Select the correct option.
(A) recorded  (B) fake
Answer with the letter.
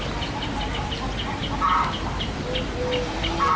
A